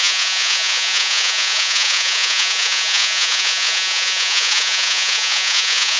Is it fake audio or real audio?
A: fake